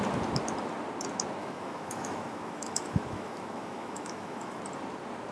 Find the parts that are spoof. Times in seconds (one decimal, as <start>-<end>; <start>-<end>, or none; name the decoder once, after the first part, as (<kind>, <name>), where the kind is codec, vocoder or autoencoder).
1.4-4.6 (autoencoder, DAC-VAE)